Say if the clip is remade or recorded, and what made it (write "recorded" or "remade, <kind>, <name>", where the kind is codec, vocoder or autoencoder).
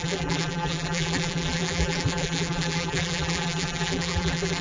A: remade, vocoder, BigVGAN v2